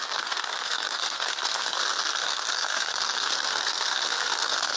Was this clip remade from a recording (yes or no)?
yes